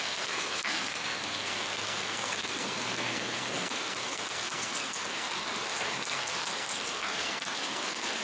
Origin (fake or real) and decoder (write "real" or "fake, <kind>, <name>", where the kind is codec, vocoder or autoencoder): fake, codec, SNAC